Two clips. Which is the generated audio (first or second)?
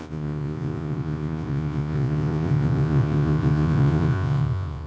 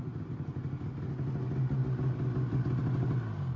first